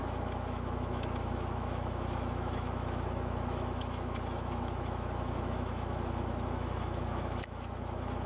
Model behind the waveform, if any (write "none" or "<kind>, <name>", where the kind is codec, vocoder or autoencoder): autoencoder, DAC-VAE